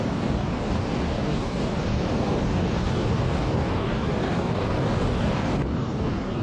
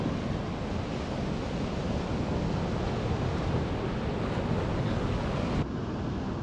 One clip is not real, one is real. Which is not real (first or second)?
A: first